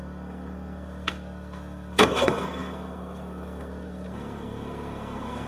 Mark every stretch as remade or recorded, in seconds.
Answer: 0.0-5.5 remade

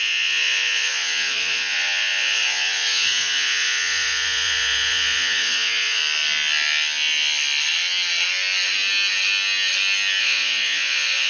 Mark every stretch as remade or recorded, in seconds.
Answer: 0.0-6.0 remade; 6.0-10.2 recorded; 10.2-11.3 remade

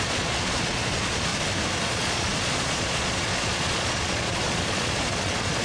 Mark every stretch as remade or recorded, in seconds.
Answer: 0.0-1.3 remade; 1.3-1.9 recorded; 1.9-5.6 remade

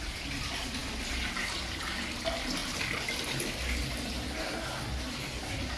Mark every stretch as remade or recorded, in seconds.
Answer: 0.0-5.8 recorded

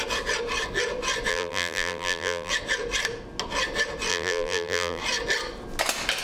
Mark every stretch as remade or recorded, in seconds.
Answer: 0.0-1.3 recorded; 1.3-2.5 remade; 2.5-4.1 recorded; 4.1-5.0 remade; 5.0-6.2 recorded

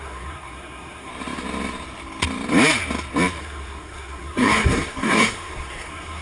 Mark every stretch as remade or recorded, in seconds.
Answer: 0.0-1.1 remade; 1.1-3.4 recorded; 3.4-6.2 remade

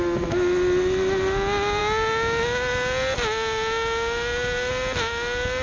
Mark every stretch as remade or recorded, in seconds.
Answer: 0.0-5.6 recorded